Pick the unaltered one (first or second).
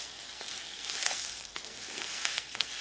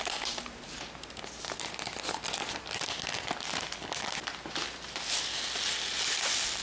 second